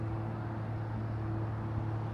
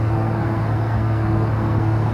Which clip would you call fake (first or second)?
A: second